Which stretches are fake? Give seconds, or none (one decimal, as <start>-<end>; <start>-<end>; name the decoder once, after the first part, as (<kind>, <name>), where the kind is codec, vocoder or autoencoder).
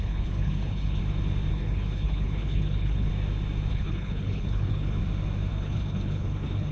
0.0-1.0 (codec, HILCodec); 1.5-3.1; 3.7-5.0; 5.5-6.7